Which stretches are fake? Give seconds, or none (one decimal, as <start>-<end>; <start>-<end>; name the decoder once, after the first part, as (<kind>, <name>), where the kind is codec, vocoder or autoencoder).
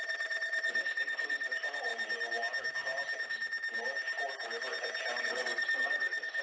0.0-1.9 (vocoder, WaveNeXt); 5.2-6.4